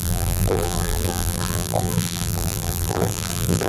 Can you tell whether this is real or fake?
fake